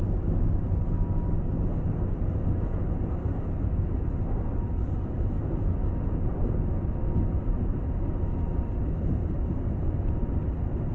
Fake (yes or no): no